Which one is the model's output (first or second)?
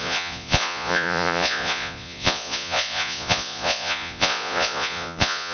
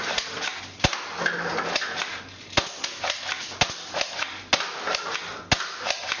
first